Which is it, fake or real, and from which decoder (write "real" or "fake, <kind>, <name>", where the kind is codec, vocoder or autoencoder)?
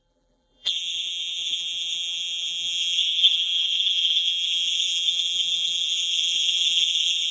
fake, vocoder, BigVGAN v2